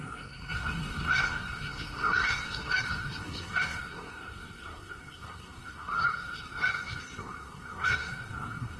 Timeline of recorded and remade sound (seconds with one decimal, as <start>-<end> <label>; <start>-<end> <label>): 0.0-8.8 remade